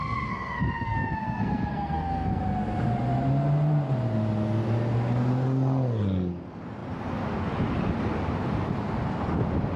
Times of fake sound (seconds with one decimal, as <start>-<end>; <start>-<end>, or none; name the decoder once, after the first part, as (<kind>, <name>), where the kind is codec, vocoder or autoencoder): 0.0-2.4 (codec, SNAC)

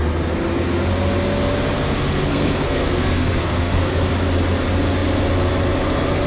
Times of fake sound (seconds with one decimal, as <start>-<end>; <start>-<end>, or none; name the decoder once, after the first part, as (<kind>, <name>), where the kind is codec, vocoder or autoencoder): 2.2-4.1 (codec, SNAC)

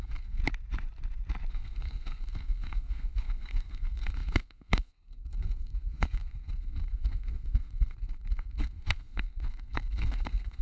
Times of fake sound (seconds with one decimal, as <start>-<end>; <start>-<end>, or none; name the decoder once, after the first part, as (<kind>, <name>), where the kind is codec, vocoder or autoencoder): 0.0-0.4 (codec, SNAC); 1.5-10.6

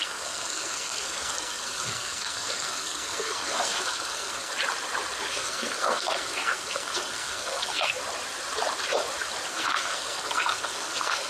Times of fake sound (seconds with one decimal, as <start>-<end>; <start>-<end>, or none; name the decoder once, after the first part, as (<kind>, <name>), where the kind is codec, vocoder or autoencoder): 0.0-4.5 (codec, SNAC); 5.3-8.0; 9.5-11.3

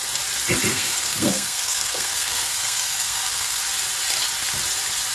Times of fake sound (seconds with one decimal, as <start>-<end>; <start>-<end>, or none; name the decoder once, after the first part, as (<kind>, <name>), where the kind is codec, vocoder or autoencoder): 0.7-3.6 (codec, SNAC)